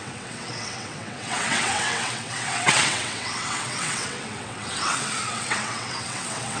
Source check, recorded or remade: remade